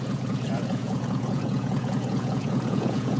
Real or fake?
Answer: fake